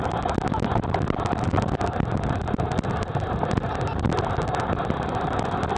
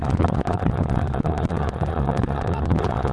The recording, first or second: first